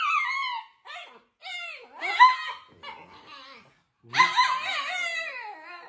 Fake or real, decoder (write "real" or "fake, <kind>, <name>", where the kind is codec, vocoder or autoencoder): real